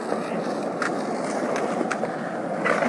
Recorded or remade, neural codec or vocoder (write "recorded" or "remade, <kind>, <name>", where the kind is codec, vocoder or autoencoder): recorded